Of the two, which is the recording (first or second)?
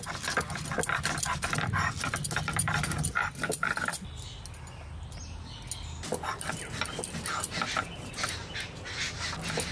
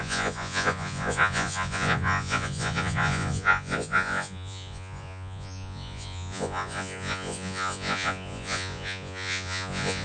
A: first